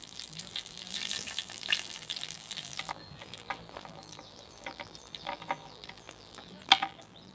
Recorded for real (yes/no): no